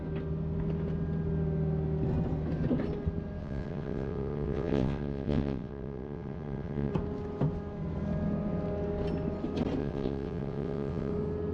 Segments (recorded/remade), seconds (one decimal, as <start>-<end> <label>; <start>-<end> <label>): 0.0-3.4 recorded; 3.4-6.9 remade; 6.9-9.8 recorded; 9.8-11.1 remade; 11.1-11.5 recorded

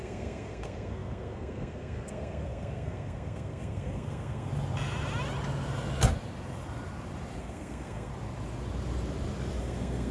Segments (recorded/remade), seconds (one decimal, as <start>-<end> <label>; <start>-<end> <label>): 0.0-4.5 remade; 4.5-7.4 recorded; 7.4-8.1 remade; 8.1-9.6 recorded; 9.6-10.1 remade

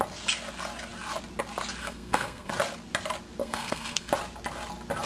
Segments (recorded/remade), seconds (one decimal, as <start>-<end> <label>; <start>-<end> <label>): 0.0-1.8 recorded; 1.8-2.5 remade; 2.5-3.4 recorded; 3.4-4.1 remade; 4.1-5.1 recorded

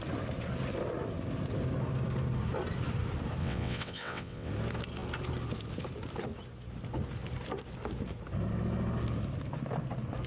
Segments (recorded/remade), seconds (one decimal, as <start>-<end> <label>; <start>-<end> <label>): 0.0-3.4 recorded; 3.4-4.5 remade; 4.5-10.3 recorded

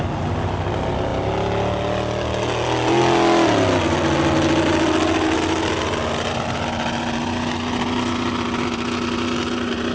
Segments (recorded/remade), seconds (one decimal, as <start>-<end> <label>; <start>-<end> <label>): 0.0-9.9 recorded